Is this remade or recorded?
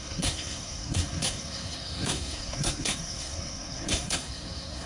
remade